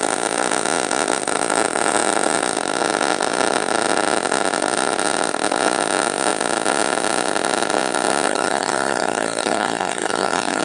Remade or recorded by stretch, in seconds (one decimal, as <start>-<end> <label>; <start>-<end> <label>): 0.0-8.3 recorded; 8.3-10.6 remade